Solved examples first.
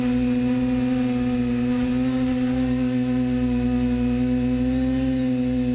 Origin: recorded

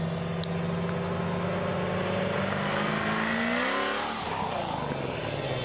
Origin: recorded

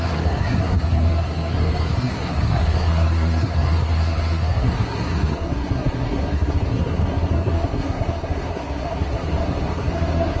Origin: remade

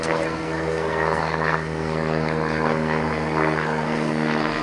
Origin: remade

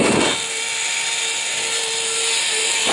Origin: recorded